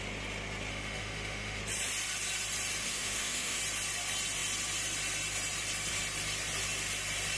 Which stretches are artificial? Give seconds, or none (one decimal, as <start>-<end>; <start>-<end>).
0.7-1.6; 2.8-3.6